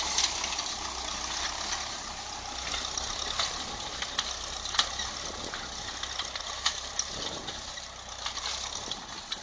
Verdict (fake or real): real